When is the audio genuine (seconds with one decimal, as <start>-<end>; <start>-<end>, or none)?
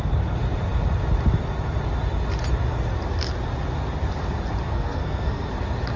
0.0-4.7; 5.5-6.0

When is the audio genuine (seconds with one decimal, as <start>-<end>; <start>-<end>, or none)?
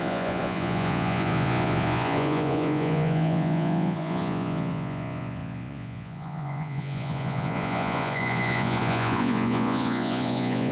none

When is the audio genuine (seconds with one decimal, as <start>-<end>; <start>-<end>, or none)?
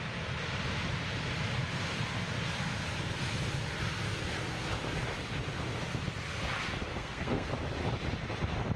0.0-6.9; 7.5-8.8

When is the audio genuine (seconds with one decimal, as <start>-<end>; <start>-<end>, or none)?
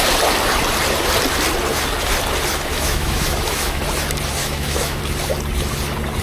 0.0-2.7; 3.8-4.4; 5.0-6.2